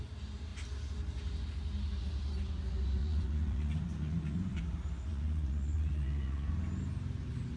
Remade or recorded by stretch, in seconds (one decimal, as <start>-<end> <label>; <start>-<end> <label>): 0.0-3.0 recorded; 3.0-4.6 remade; 4.6-5.1 recorded; 5.1-6.5 remade; 6.5-7.6 recorded